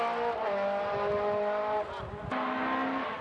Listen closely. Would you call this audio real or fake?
real